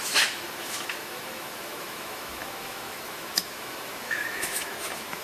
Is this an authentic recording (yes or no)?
no